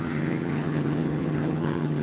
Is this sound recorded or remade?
remade